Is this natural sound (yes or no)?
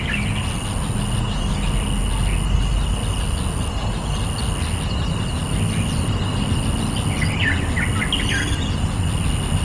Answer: yes